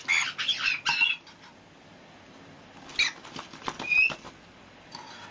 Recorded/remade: recorded